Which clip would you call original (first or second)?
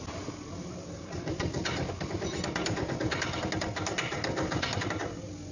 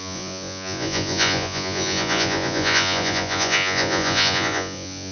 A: first